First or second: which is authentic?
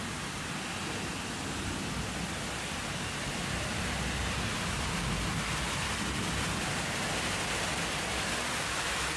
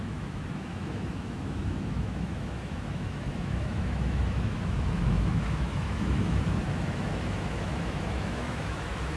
first